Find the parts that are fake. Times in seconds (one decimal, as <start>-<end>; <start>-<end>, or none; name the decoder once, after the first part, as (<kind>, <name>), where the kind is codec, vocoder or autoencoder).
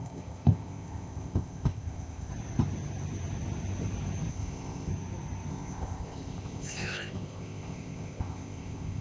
0.0-2.3 (codec, ZipCodec); 4.3-4.9; 5.5-9.0